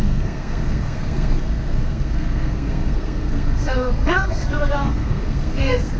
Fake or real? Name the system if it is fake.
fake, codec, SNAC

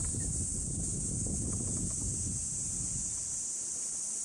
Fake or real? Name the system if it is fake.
real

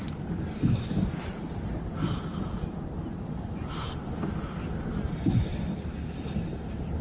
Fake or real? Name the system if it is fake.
real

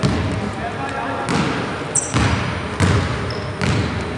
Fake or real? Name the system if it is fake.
real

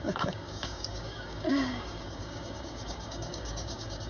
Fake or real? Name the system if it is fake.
fake, codec, DAC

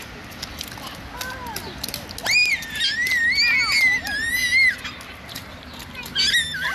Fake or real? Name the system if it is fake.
real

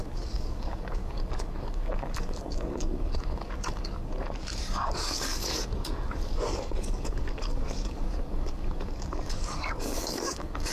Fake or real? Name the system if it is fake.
fake, codec, DAC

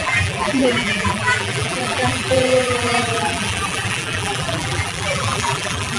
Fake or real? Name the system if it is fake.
fake, vocoder, BigVGAN v2